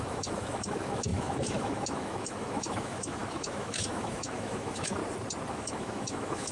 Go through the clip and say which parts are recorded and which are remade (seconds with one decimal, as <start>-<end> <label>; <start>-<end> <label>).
0.0-5.0 remade; 5.0-5.5 recorded; 5.5-6.5 remade